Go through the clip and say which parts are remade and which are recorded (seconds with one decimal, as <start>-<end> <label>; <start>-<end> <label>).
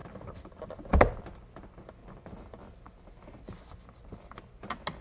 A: 0.0-0.9 remade; 0.9-2.0 recorded; 2.0-3.4 remade; 3.4-5.0 recorded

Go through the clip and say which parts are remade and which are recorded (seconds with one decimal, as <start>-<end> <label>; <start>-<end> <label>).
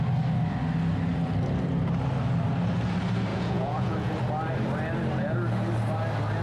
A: 0.0-3.3 recorded; 3.3-4.1 remade; 4.1-6.4 recorded